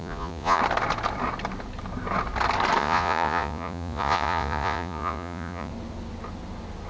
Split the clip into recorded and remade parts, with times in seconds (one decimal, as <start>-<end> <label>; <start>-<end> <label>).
0.0-0.6 remade; 0.6-2.8 recorded; 2.8-5.7 remade; 5.7-6.9 recorded